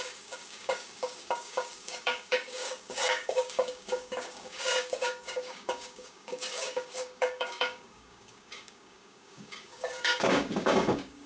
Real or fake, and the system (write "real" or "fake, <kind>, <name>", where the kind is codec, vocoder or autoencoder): fake, codec, DAC